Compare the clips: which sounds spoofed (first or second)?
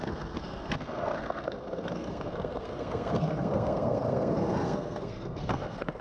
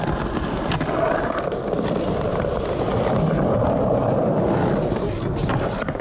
first